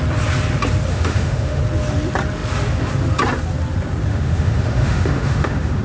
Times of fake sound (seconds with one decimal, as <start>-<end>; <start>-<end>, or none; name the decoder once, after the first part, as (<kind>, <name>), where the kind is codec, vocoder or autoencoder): 0.9-1.6 (autoencoder, DAC-VAE); 4.1-5.8